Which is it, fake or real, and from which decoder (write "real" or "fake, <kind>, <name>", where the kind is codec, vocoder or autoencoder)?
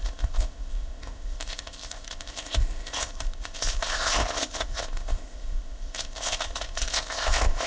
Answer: fake, codec, ZipCodec